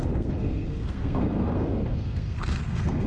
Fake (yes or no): yes